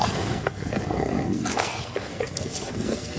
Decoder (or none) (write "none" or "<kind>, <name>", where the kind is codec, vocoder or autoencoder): codec, SNAC